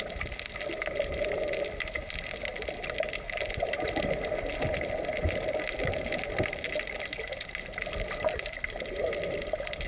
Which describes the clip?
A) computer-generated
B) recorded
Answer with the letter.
B